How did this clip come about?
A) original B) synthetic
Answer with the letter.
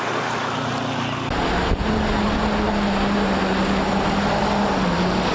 A